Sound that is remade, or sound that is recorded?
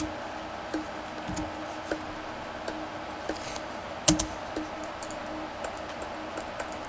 recorded